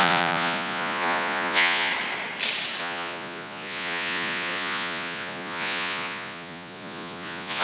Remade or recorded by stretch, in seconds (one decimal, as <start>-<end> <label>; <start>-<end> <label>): 0.0-1.9 remade; 1.9-2.8 recorded; 2.8-7.6 remade